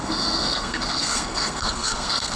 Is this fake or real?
fake